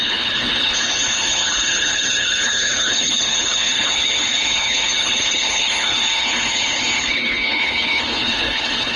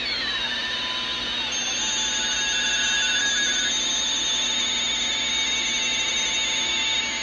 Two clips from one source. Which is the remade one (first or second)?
first